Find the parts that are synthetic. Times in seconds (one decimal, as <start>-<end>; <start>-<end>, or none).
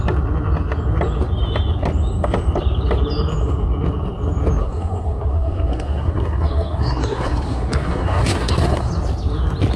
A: 4.6-8.9